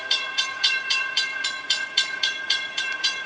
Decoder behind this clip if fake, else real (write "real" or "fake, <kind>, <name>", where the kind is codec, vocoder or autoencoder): fake, vocoder, Vocos